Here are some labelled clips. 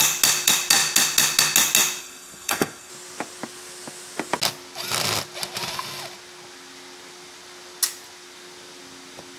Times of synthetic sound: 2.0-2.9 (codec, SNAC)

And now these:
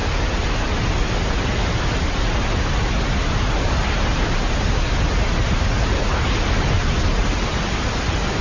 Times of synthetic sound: none

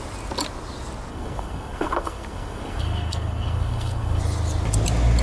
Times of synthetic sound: 1.1-4.2 (codec, SNAC)

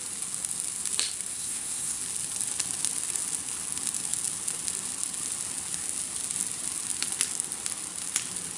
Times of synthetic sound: 1.3-2.0 (codec, SNAC)

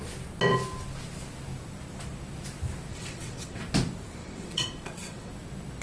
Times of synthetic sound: 2.9-3.6 (vocoder, WaveNeXt); 4.2-5.3